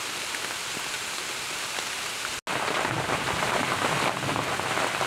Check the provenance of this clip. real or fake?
real